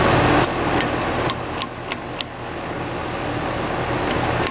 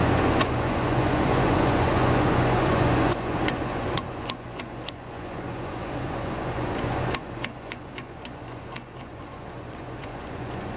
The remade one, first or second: second